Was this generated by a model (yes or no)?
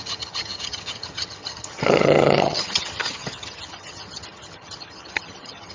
yes